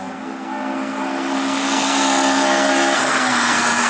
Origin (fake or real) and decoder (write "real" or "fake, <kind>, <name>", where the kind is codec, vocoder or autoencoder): fake, codec, SNAC